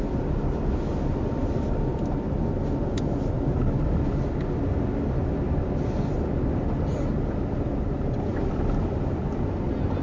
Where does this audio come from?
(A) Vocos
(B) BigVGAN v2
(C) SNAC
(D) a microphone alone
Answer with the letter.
D